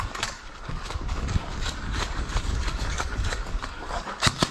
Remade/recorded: remade